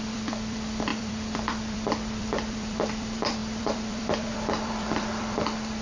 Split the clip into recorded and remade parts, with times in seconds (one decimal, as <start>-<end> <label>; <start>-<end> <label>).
0.0-5.8 remade